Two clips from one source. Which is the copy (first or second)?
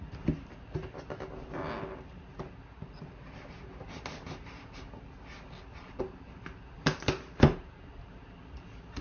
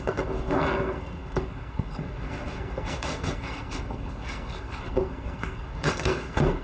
second